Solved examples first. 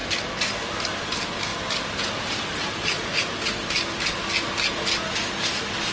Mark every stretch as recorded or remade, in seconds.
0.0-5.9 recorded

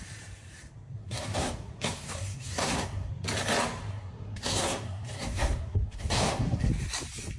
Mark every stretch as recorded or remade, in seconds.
0.0-1.0 recorded; 1.0-3.1 remade; 3.1-3.9 recorded; 3.9-6.7 remade; 6.7-7.4 recorded

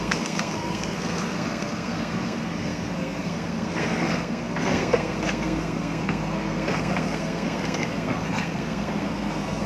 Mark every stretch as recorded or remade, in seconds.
0.0-9.7 remade

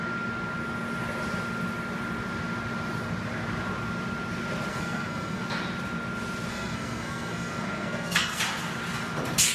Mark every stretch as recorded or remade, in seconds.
0.0-4.7 recorded; 4.7-5.4 remade; 5.4-6.5 recorded; 6.5-8.4 remade; 8.4-9.5 recorded

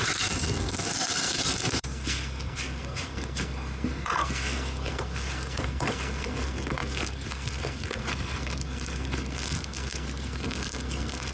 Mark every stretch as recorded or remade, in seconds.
0.0-11.3 remade